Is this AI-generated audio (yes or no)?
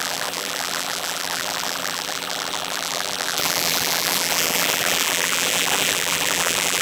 yes